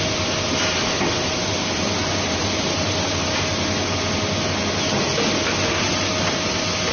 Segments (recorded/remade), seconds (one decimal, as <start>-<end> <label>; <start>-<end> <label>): 0.0-6.9 recorded